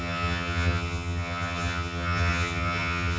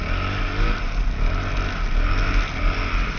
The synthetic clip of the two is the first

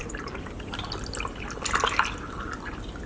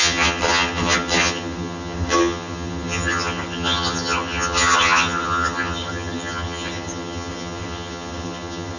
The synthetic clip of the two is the second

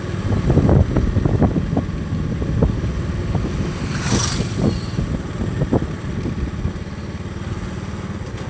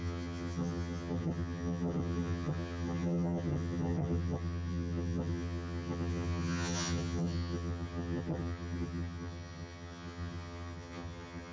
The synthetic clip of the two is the second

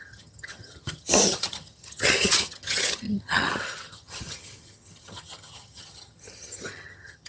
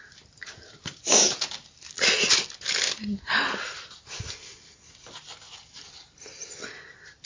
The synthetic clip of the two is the first